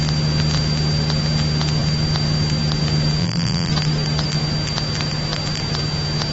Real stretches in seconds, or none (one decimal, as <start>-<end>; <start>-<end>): 0.0-3.2; 3.7-6.3